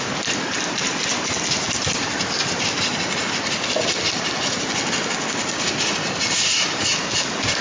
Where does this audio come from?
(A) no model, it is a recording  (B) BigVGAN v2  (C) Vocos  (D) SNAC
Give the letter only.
A